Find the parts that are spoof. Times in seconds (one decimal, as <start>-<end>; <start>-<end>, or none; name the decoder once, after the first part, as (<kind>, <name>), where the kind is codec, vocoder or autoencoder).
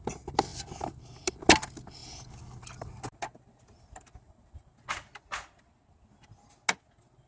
none